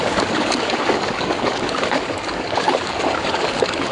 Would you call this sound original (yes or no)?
no